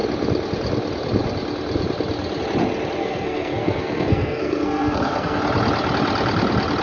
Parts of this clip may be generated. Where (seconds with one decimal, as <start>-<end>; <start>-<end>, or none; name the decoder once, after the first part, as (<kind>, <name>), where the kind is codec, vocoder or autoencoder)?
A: 3.0-5.4 (codec, SNAC)